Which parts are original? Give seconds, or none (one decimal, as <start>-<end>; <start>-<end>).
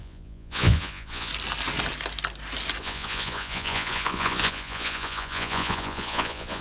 1.3-2.8